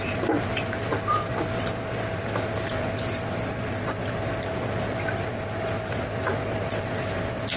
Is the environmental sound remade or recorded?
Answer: recorded